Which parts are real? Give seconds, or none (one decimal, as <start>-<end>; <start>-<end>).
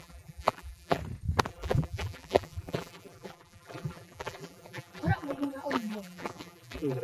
1.0-1.5